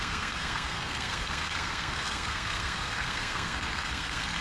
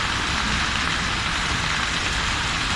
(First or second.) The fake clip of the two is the first